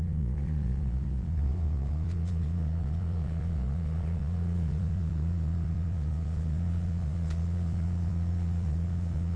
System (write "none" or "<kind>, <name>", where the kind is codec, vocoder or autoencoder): vocoder, Vocos